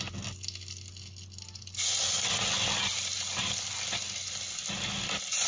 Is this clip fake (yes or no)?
no